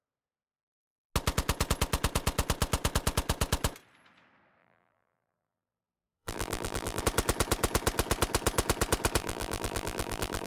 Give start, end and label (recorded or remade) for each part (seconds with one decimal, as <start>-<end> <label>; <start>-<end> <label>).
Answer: 0.0-4.6 recorded; 4.6-7.0 remade; 7.0-9.2 recorded; 9.2-10.5 remade